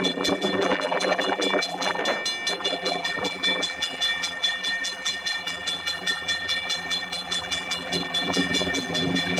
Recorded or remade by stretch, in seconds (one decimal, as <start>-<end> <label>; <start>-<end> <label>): 0.0-2.0 remade; 2.0-2.5 recorded; 2.5-9.4 remade